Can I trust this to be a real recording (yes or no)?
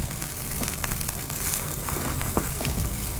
no